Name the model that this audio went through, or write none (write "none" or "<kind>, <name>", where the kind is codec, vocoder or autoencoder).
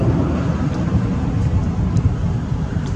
vocoder, BigVGAN v2